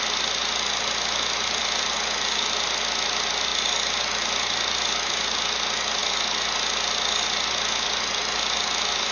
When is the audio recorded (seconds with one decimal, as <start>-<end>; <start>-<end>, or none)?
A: 0.0-9.1

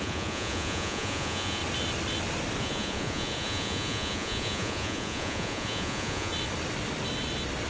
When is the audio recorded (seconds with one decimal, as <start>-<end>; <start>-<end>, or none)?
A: 1.6-2.6; 6.3-7.7

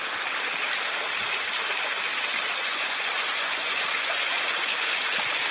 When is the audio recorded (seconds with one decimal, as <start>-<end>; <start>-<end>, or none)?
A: 0.0-2.6; 5.0-5.5